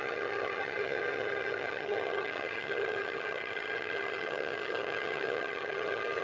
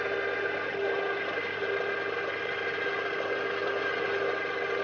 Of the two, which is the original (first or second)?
second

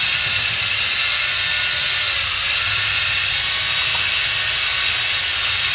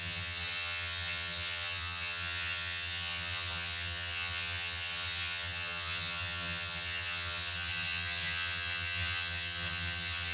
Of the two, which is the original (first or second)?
first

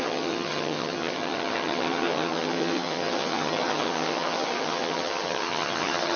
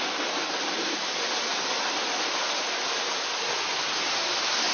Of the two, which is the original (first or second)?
second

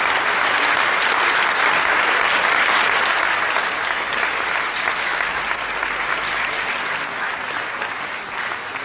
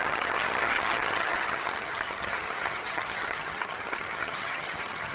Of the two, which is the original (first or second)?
first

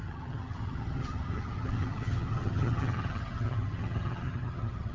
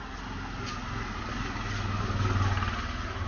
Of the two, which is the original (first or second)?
second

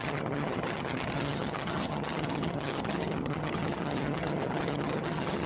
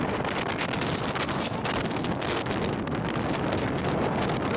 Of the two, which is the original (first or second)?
second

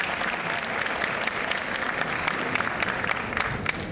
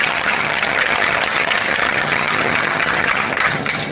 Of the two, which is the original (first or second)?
first